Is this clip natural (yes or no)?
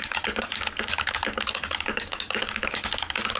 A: no